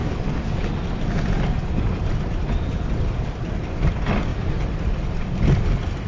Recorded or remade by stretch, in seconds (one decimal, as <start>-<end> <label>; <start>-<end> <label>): 0.0-6.1 recorded